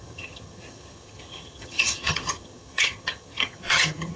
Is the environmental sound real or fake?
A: fake